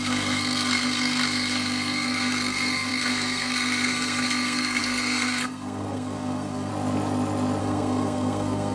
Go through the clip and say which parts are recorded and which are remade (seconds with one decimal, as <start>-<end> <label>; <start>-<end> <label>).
0.0-6.7 remade; 6.7-7.6 recorded; 7.6-8.7 remade